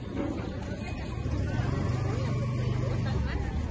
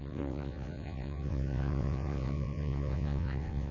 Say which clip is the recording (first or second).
first